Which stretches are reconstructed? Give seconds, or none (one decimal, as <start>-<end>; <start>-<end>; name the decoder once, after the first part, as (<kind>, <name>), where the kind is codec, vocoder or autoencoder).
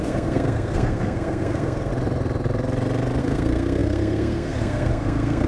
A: 0.0-1.9 (codec, SNAC); 3.2-5.5